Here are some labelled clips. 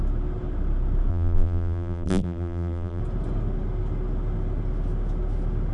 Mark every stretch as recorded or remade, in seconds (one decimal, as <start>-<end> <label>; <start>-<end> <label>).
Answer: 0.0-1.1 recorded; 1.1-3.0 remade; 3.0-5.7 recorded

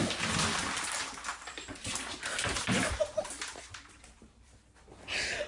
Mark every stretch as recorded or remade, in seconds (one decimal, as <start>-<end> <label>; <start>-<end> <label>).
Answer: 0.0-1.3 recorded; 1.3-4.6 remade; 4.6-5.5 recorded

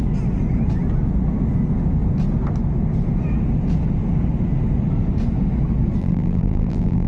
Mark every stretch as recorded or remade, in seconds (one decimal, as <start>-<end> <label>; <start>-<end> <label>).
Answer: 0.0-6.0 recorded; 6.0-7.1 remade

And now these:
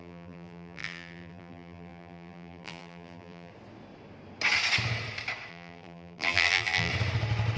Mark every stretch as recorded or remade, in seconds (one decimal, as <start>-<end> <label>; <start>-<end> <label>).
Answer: 0.0-3.5 remade; 3.5-5.5 recorded; 5.5-6.9 remade; 6.9-7.6 recorded